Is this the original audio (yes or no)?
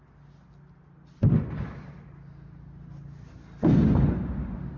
yes